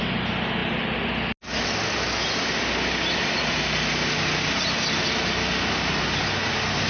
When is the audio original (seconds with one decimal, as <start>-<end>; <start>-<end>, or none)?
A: 0.0-6.9